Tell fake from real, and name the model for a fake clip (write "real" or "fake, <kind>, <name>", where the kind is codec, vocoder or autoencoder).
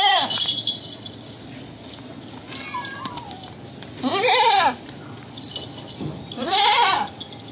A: real